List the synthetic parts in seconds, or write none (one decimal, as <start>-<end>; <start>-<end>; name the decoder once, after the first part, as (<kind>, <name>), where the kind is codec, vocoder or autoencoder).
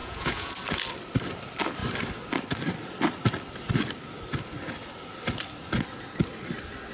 0.0-0.5 (vocoder, Vocos)